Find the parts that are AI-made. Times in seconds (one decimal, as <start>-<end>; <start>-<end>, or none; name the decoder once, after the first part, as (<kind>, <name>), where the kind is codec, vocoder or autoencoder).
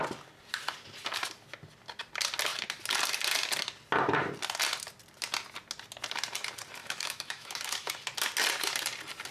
6.8-7.9 (autoencoder, DAC-VAE)